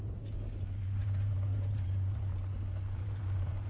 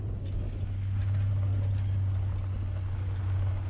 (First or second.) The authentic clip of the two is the second